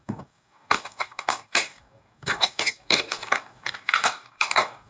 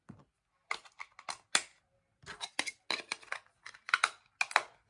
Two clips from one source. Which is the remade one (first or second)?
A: first